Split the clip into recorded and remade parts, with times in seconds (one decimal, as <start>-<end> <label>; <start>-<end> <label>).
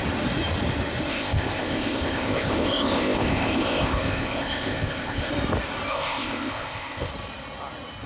0.0-1.1 recorded; 1.1-5.3 remade; 5.3-5.9 recorded; 5.9-7.1 remade; 7.1-8.1 recorded